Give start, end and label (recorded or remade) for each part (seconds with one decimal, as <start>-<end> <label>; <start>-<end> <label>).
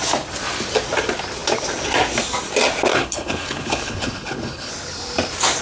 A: 0.0-2.9 recorded; 2.9-4.7 remade; 4.7-5.6 recorded